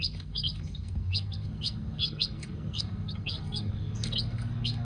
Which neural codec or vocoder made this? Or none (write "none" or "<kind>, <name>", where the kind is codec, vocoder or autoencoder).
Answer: codec, SNAC